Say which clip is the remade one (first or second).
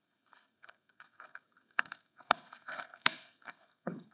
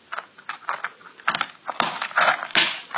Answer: first